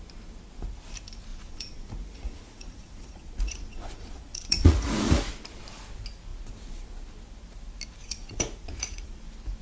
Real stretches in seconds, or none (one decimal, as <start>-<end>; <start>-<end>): 0.0-1.3; 5.3-8.0; 9.2-9.6